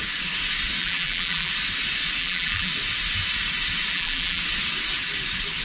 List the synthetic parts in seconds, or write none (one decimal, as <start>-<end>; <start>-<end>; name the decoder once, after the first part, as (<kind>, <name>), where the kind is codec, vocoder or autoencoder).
0.8-1.5 (vocoder, BigVGAN v2); 2.2-2.7; 3.9-4.4